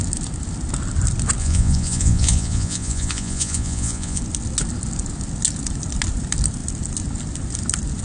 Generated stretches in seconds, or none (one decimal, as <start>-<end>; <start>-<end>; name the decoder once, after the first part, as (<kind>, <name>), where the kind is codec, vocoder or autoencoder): 1.4-4.2 (vocoder, Vocos)